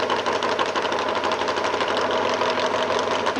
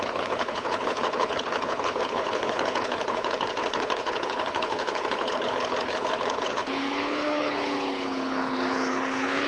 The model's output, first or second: second